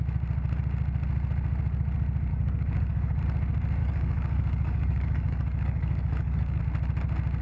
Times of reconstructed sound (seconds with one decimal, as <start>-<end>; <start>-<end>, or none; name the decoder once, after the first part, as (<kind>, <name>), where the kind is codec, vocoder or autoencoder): 2.3-3.2 (codec, DAC); 3.8-6.6